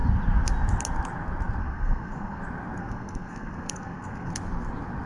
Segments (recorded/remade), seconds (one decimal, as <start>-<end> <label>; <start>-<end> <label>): 0.0-1.6 recorded; 1.6-2.4 remade; 2.4-2.8 recorded; 2.8-4.3 remade; 4.3-5.1 recorded